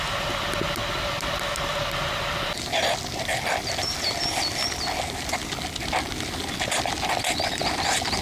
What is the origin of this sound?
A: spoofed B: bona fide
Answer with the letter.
B